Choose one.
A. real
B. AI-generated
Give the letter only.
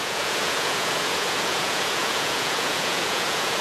B